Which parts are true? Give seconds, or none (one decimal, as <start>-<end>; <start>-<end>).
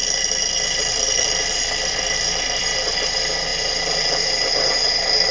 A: 2.6-5.3